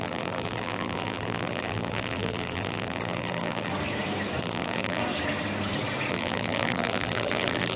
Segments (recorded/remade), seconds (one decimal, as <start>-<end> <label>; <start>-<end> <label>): 0.0-3.7 remade; 3.7-4.4 recorded; 4.4-5.0 remade; 5.0-6.1 recorded; 6.1-7.8 remade